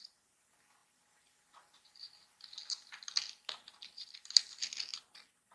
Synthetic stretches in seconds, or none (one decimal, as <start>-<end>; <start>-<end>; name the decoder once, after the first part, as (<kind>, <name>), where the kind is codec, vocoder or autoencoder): none